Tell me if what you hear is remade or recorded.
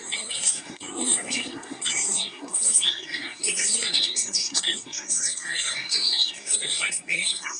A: remade